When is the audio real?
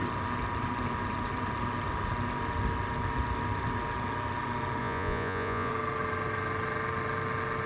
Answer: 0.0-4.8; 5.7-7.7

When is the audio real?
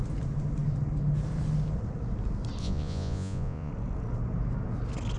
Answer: 0.0-2.6; 3.7-5.2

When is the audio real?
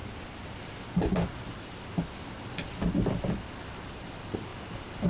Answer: 0.0-4.5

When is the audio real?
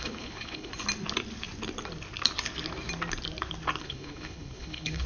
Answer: 0.7-3.8